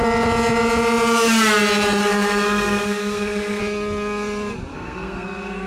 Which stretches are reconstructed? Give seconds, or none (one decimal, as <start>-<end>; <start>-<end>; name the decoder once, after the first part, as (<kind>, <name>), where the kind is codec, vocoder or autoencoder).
2.0-3.6 (codec, SNAC); 4.7-5.7